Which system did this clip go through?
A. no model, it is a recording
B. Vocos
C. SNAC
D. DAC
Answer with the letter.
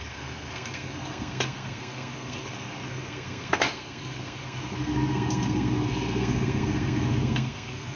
C